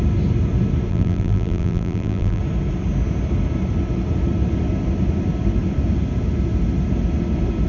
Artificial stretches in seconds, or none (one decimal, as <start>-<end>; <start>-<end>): 0.9-2.4